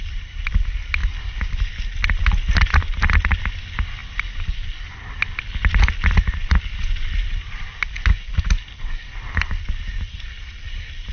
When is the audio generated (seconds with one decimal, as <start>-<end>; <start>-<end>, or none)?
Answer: none